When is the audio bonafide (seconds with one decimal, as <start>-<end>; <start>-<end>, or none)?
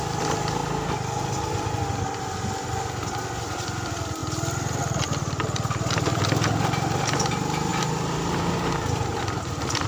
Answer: 0.0-7.7; 9.2-9.9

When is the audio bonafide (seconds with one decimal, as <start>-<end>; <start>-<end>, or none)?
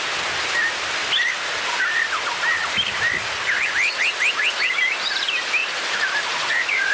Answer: 0.0-5.6; 6.5-6.9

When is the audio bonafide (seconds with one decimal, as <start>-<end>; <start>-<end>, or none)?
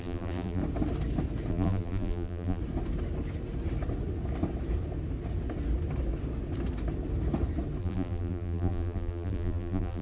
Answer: 0.6-1.5; 2.6-7.8